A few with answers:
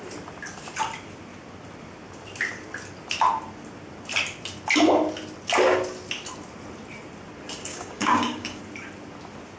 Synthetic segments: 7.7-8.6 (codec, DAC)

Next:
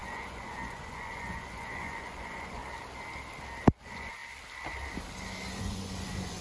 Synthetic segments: 0.0-2.6 (vocoder, Vocos); 3.8-4.2; 5.6-6.4

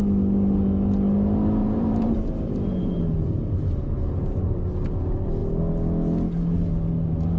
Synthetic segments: 1.6-4.6 (vocoder, BigVGAN v2)

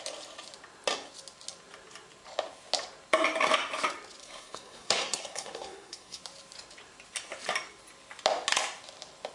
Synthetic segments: 4.2-6.2 (codec, SNAC)